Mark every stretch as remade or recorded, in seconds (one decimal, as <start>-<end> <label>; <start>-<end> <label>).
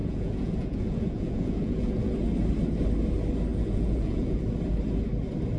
0.0-2.1 remade; 2.1-3.5 recorded; 3.5-4.4 remade; 4.4-5.6 recorded